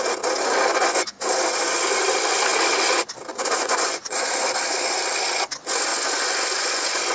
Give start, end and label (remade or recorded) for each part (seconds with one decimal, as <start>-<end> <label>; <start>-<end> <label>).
0.0-0.7 recorded; 0.7-1.2 remade; 1.2-3.3 recorded; 3.3-4.3 remade; 4.3-5.9 recorded; 5.9-7.1 remade